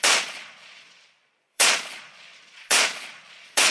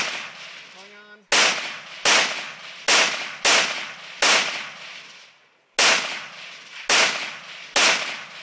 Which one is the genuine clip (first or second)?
second